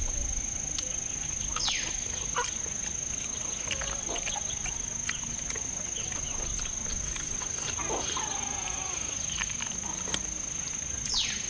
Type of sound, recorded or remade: recorded